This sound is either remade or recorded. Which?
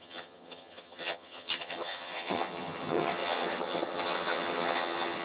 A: remade